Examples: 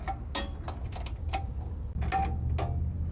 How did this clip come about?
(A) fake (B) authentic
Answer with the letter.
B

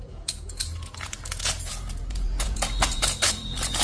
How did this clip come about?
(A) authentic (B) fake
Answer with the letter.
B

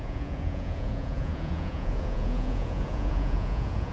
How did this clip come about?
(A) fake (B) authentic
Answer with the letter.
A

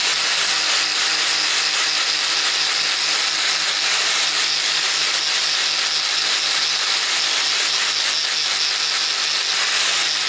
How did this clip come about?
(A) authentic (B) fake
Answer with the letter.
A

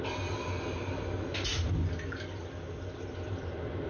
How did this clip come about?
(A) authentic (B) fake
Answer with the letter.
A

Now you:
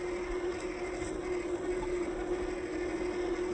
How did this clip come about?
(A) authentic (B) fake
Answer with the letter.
A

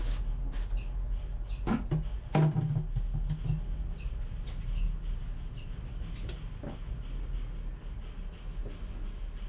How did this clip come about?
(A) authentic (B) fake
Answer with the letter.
A